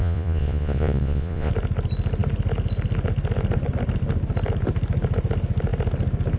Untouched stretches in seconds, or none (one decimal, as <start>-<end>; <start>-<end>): 1.5-6.4